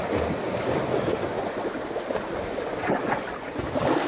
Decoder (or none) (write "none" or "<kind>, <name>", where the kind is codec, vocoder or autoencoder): none